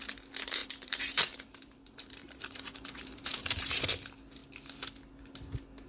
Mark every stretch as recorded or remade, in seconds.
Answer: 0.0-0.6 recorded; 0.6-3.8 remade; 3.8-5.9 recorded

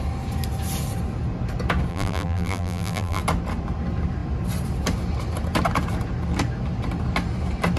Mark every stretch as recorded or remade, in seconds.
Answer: 0.0-1.9 recorded; 1.9-3.2 remade; 3.2-7.8 recorded